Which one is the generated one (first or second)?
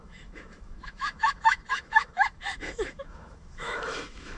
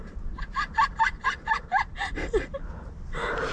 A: first